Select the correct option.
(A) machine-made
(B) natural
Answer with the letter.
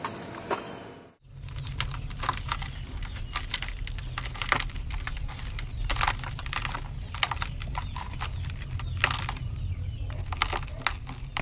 B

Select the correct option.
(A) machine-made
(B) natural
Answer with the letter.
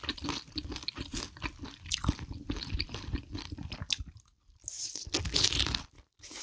B